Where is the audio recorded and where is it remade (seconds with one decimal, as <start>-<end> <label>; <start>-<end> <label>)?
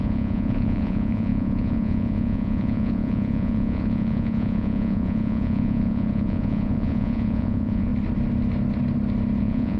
0.0-7.9 remade; 7.9-9.4 recorded; 9.4-9.8 remade